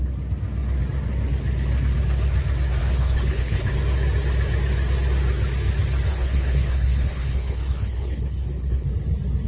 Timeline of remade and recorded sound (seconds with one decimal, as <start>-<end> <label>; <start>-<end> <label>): 0.0-2.8 recorded; 2.8-3.7 remade; 3.7-6.1 recorded; 6.1-8.9 remade; 8.9-9.5 recorded